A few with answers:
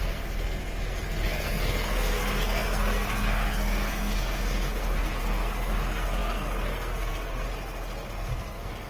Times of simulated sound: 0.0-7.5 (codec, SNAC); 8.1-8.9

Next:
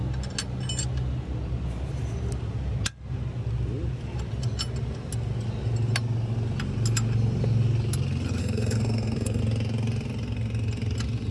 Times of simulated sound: 8.4-9.4 (codec, SNAC)

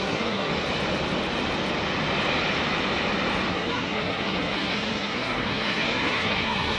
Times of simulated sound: 0.0-0.5 (codec, SNAC); 3.5-6.8

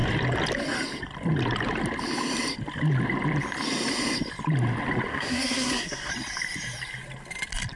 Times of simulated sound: 5.1-6.1 (codec, SNAC)

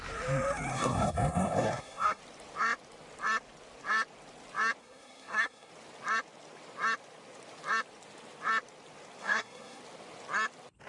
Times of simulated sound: 0.7-2.2 (codec, SNAC); 4.8-5.7; 9.2-9.8

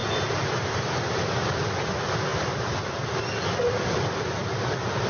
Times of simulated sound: none

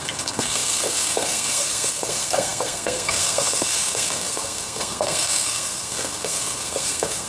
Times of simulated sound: 0.0-7.3 (codec, SNAC)

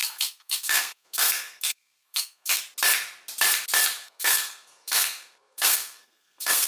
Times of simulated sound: 0.0-2.6 (codec, SNAC); 4.0-6.7